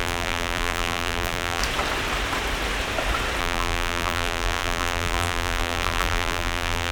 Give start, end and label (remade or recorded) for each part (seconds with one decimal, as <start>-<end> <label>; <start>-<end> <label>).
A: 0.0-1.6 remade; 1.6-3.4 recorded; 3.4-6.9 remade